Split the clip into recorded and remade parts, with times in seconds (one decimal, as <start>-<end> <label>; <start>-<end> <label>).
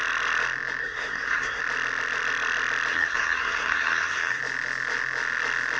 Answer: 0.0-0.8 recorded; 0.8-1.6 remade; 1.6-2.9 recorded; 2.9-4.4 remade; 4.4-5.8 recorded